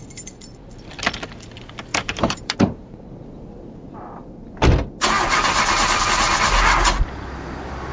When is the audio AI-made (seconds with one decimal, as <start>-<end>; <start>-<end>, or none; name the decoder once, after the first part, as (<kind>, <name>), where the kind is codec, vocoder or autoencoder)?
1.9-3.1 (vocoder, BigVGAN v2)